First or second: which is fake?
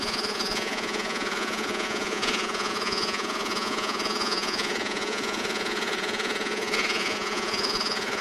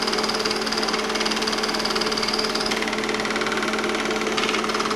first